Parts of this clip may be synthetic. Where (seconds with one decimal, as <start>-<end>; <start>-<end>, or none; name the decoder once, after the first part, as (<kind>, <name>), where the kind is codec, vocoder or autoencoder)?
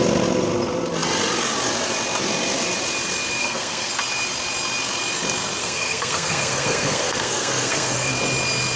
3.4-3.9 (codec, SNAC); 5.6-8.1